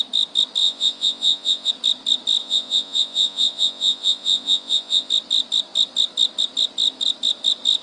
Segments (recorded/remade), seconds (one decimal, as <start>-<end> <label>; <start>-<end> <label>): 0.0-0.6 recorded; 0.6-1.7 remade; 1.7-2.4 recorded; 2.4-5.1 remade; 5.1-7.8 recorded